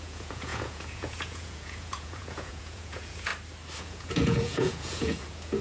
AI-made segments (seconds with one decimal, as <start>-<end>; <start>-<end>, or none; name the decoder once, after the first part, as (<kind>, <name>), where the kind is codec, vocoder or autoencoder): 0.0-3.3 (vocoder, Vocos); 3.8-5.6

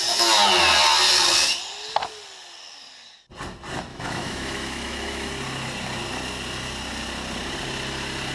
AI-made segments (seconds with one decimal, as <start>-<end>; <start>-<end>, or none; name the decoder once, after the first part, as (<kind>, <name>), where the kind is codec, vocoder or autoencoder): 3.9-5.3 (autoencoder, DAC-VAE)

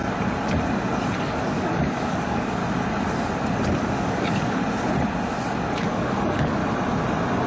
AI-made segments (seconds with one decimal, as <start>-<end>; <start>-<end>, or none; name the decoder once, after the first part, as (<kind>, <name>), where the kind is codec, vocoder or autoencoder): 1.2-2.6 (codec, DAC); 3.8-4.6; 5.7-6.6

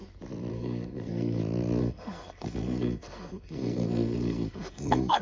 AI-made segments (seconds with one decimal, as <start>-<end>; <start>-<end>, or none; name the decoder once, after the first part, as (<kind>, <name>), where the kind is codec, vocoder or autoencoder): 0.5-1.4 (codec, SNAC); 1.8-5.2